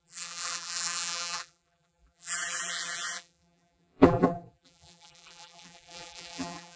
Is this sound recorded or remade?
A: remade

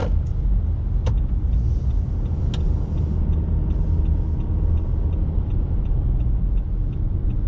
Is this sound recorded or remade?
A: recorded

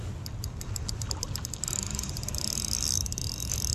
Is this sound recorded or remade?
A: recorded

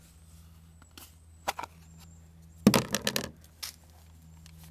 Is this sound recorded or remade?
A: recorded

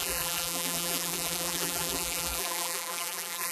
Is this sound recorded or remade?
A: remade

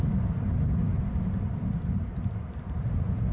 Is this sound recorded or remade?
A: remade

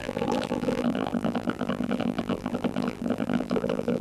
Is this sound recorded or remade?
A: remade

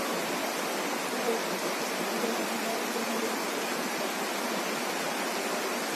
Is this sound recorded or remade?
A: remade